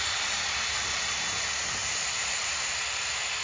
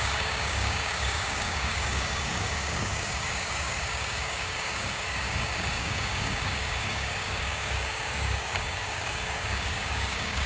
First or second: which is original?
first